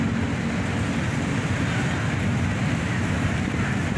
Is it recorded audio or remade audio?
recorded